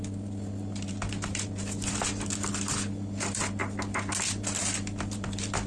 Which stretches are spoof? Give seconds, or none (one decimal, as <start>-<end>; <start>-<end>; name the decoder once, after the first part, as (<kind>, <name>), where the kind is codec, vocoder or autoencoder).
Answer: none